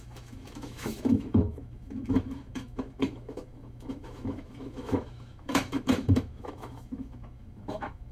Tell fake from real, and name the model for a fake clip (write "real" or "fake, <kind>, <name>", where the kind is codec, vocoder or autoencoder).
fake, autoencoder, DAC-VAE